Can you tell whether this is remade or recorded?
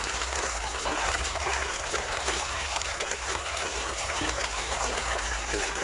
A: remade